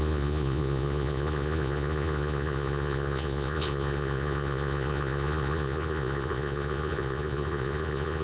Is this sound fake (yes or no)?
yes